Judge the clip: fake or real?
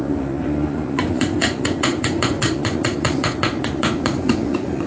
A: fake